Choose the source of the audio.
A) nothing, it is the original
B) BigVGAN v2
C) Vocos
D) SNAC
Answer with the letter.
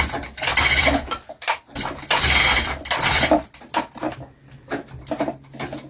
A